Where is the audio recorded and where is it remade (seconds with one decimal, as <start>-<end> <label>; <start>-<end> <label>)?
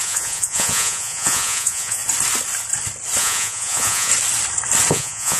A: 0.0-2.0 remade; 2.0-3.2 recorded; 3.2-4.1 remade; 4.1-4.9 recorded; 4.9-5.4 remade